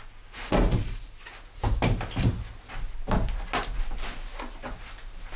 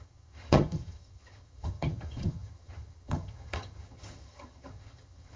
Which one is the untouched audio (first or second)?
first